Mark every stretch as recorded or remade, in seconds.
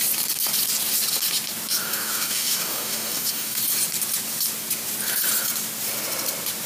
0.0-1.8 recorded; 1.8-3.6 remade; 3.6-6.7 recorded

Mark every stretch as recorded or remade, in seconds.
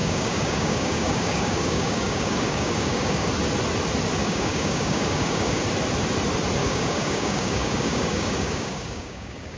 0.0-3.3 remade; 3.3-4.2 recorded; 4.2-5.6 remade; 5.6-6.6 recorded; 6.6-9.6 remade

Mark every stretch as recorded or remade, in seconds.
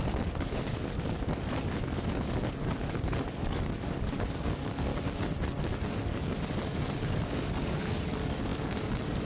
0.0-4.9 remade; 4.9-5.6 recorded; 5.6-9.2 remade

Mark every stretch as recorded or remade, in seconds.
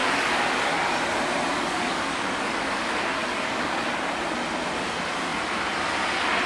0.0-0.8 remade; 0.8-1.5 recorded; 1.5-2.8 remade; 2.8-3.2 recorded; 3.2-4.1 remade; 4.1-6.5 recorded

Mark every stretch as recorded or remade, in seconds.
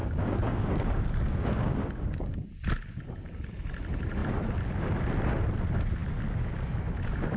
0.0-2.5 remade; 2.5-7.4 recorded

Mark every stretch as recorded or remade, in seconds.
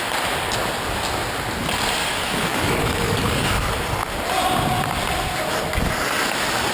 0.0-2.0 recorded; 2.0-3.7 remade; 3.7-6.7 recorded